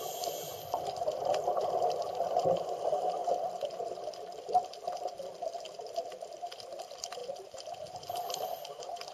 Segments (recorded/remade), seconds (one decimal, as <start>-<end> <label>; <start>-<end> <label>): 0.0-3.2 recorded; 3.2-5.7 remade; 5.7-9.1 recorded